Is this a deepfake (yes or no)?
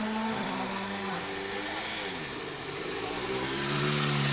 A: no